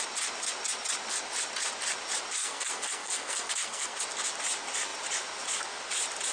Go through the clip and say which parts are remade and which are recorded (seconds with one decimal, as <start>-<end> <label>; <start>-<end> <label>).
0.0-2.4 recorded; 2.4-4.0 remade; 4.0-6.3 recorded